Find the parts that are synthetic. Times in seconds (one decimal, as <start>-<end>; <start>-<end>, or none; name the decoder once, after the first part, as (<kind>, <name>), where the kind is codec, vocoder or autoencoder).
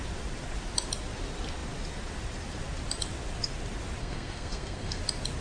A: 4.0-5.0 (codec, SNAC)